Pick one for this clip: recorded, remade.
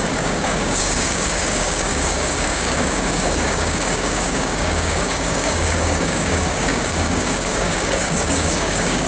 remade